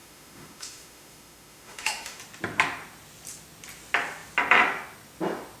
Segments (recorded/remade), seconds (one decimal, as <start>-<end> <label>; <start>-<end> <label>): 0.0-2.2 remade; 2.2-5.6 recorded